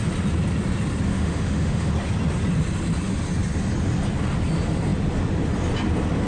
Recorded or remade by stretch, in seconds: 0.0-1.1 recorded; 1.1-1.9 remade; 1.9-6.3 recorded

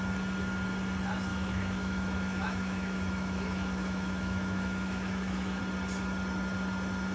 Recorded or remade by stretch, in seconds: 0.0-1.3 recorded; 1.3-5.6 remade; 5.6-7.1 recorded

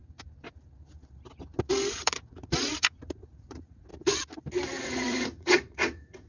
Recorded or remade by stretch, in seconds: 0.0-1.9 recorded; 1.9-3.9 remade; 3.9-4.8 recorded; 4.8-6.3 remade

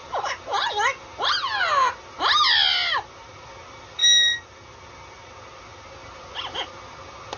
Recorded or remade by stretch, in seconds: 0.0-7.4 recorded

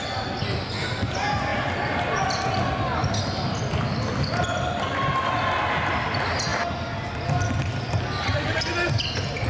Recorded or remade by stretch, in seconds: 0.0-9.5 recorded

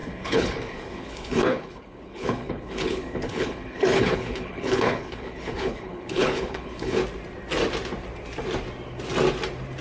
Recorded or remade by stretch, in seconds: 0.0-7.0 remade; 7.0-9.8 recorded